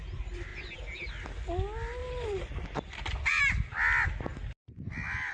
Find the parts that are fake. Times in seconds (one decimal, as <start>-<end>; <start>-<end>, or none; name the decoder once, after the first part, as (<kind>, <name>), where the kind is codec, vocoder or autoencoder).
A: 2.0-3.4 (vocoder, BigVGAN v2)